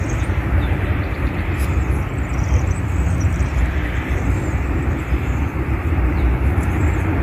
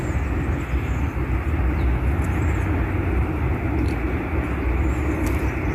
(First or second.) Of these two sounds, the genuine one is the second